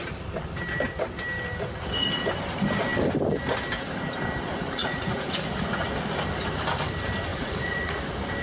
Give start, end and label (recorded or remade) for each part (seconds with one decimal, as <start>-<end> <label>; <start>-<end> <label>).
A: 0.0-4.8 recorded; 4.8-5.9 remade; 5.9-7.3 recorded; 7.3-8.0 remade; 8.0-8.4 recorded

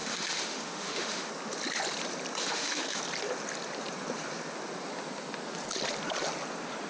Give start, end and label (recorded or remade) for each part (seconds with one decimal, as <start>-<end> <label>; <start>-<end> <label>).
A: 0.0-1.3 remade; 1.3-2.4 recorded; 2.4-3.0 remade; 3.0-6.9 recorded

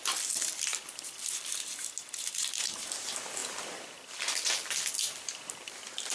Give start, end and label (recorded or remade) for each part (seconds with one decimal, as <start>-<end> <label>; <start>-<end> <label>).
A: 0.0-3.4 recorded; 3.4-4.2 remade; 4.2-6.1 recorded

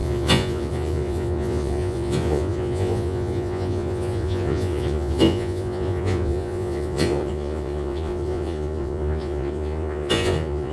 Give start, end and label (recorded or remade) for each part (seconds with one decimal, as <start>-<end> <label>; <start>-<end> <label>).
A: 0.0-10.7 remade

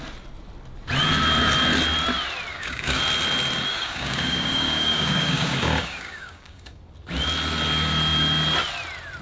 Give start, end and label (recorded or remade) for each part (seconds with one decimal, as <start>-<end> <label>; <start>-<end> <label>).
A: 0.0-2.5 recorded; 2.5-3.0 remade; 3.0-3.7 recorded; 3.7-6.8 remade; 6.8-9.2 recorded